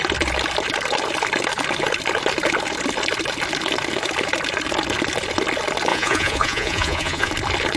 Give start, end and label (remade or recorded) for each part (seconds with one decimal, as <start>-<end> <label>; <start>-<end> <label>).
0.0-5.9 recorded; 5.9-7.3 remade; 7.3-7.8 recorded